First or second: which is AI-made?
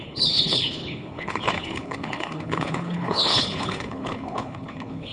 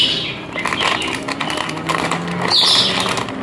first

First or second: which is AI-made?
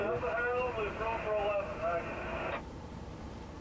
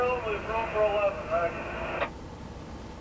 first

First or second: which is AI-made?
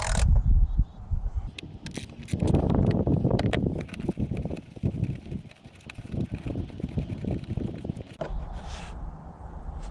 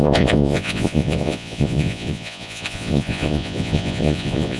second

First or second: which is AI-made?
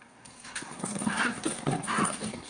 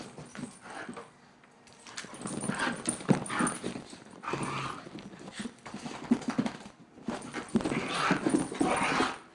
first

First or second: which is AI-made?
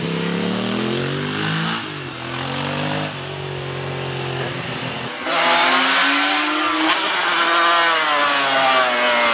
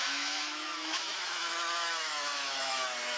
second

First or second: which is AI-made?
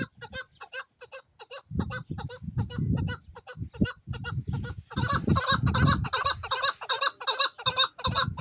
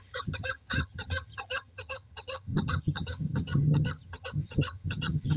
second